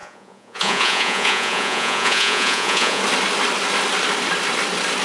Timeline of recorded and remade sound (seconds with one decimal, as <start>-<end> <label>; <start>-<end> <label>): 0.0-3.0 remade; 3.0-5.0 recorded